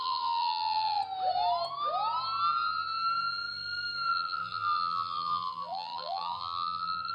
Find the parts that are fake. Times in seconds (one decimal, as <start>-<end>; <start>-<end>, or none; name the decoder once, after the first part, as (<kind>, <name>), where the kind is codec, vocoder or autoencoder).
0.0-1.0 (vocoder, BigVGAN v2); 4.1-7.1